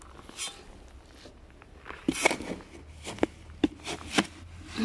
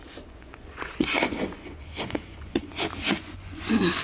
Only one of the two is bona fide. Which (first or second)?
first